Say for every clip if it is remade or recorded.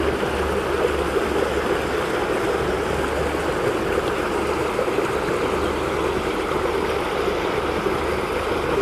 recorded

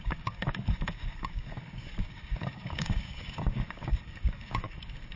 remade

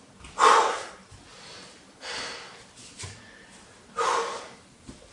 recorded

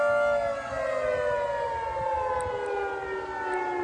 recorded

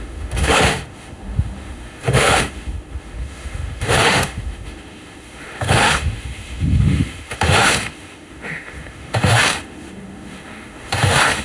remade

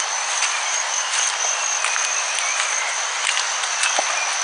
recorded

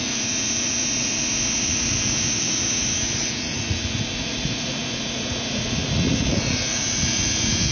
remade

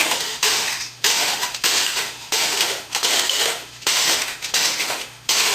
remade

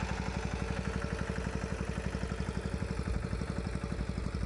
recorded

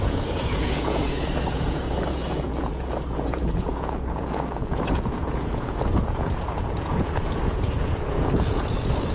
remade